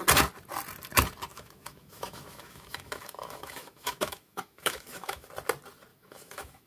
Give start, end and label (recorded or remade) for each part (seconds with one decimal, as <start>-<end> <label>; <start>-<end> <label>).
0.0-1.3 recorded; 1.3-5.3 remade; 5.3-5.9 recorded; 5.9-6.7 remade

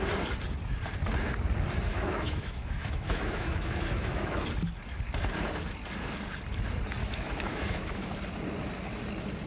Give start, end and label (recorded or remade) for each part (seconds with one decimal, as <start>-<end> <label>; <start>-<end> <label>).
0.0-1.9 recorded; 1.9-4.4 remade; 4.4-7.0 recorded; 7.0-8.1 remade; 8.1-9.5 recorded

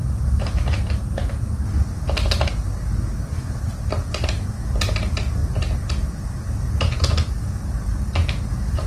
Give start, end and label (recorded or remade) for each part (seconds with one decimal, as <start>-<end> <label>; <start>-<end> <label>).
0.0-8.9 recorded

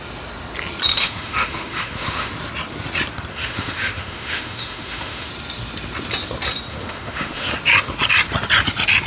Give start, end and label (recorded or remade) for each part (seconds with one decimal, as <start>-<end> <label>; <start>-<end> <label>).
0.0-0.9 recorded; 0.9-2.3 remade; 2.3-3.3 recorded; 3.3-5.3 remade; 5.3-6.7 recorded; 6.7-7.5 remade; 7.5-9.1 recorded

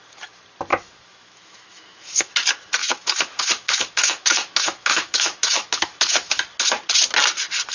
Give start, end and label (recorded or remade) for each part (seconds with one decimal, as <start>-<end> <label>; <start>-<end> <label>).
0.0-0.7 recorded; 0.7-2.3 remade; 2.3-2.8 recorded; 2.8-6.4 remade; 6.4-7.7 recorded

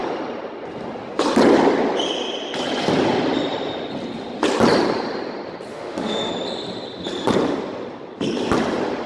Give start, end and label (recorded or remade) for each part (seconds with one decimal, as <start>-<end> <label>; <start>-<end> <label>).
0.0-5.7 recorded; 5.7-6.3 remade; 6.3-9.1 recorded